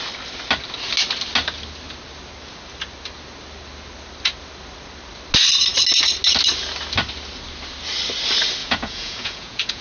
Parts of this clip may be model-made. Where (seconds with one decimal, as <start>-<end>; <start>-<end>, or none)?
8.6-9.8